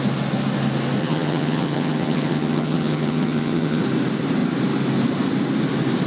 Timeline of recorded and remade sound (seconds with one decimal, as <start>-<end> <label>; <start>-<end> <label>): 0.0-1.0 recorded; 1.0-3.8 remade; 3.8-6.1 recorded